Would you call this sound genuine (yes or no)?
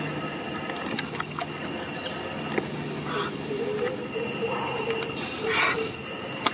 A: yes